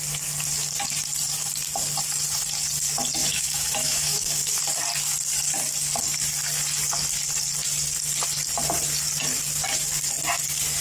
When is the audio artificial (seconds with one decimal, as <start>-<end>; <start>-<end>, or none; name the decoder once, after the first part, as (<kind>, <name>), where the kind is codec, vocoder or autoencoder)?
3.2-4.6 (autoencoder, DAC-VAE)